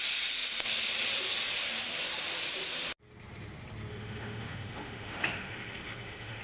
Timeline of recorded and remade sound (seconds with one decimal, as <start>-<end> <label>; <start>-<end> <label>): 0.0-3.9 recorded; 3.9-6.4 remade